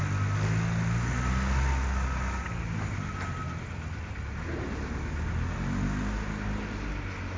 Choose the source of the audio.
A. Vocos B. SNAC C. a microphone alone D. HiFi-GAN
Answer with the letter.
C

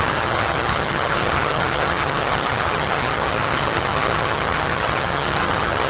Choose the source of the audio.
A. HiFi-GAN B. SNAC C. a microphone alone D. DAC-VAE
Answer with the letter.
A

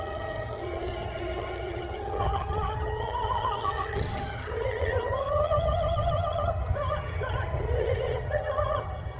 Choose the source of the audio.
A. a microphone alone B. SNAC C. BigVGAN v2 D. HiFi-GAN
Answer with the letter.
D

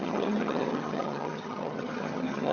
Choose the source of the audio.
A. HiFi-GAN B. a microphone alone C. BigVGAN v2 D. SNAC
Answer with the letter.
A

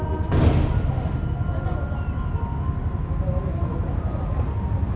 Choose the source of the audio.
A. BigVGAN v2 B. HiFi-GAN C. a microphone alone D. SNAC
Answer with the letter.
C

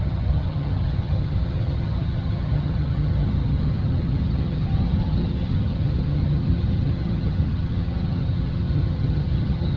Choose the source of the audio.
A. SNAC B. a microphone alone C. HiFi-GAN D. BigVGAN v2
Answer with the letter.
C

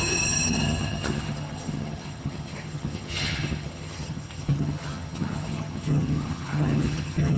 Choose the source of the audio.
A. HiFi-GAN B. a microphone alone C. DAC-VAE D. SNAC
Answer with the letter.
A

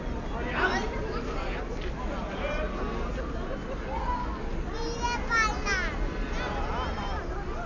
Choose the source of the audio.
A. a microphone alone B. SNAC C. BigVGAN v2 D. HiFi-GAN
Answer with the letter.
A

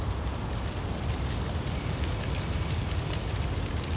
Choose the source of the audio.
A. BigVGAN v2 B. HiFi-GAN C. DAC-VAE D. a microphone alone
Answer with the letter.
D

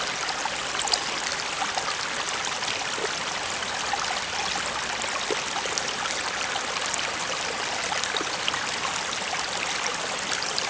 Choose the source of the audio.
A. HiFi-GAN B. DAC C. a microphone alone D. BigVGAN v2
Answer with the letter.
C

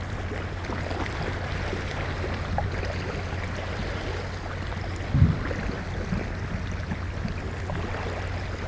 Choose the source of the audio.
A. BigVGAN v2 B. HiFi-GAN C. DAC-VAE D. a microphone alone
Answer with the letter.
D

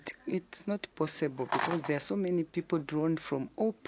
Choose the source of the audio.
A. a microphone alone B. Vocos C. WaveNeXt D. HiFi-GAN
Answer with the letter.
A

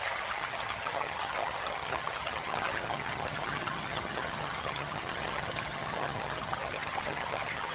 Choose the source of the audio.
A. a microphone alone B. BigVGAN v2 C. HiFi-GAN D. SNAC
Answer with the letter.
C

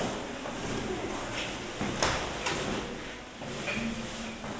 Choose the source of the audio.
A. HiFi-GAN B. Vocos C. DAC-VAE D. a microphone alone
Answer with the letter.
D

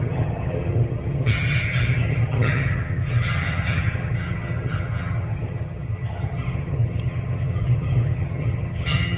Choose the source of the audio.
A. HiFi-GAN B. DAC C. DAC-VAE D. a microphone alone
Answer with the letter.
A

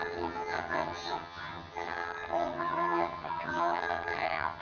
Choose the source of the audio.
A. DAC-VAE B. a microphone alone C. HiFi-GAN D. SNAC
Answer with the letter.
C